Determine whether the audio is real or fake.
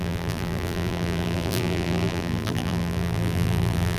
fake